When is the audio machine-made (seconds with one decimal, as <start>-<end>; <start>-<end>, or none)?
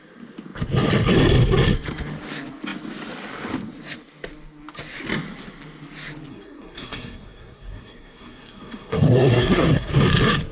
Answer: 6.3-9.9